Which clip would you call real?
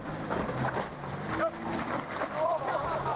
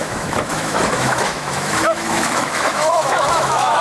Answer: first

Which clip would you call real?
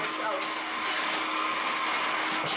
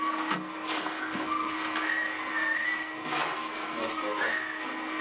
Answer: first